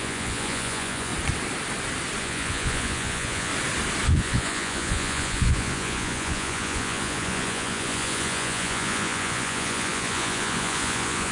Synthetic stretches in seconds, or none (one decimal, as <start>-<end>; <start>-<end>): 0.0-1.1; 2.2-3.5; 4.1-11.3